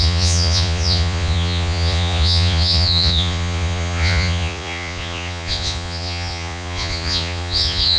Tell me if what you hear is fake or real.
fake